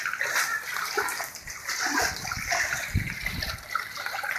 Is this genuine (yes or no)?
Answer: yes